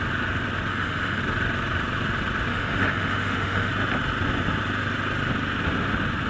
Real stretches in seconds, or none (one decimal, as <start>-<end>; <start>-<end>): 0.0-0.7; 1.2-2.5; 3.7-6.3